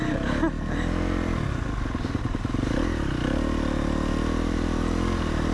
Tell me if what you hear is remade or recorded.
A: recorded